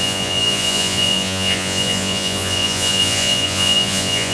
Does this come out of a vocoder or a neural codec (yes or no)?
yes